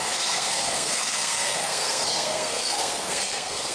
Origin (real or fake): fake